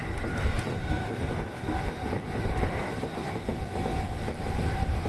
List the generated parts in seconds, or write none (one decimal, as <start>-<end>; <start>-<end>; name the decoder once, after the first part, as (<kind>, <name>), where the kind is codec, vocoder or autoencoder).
0.0-3.5 (vocoder, BigVGAN v2); 4.3-5.1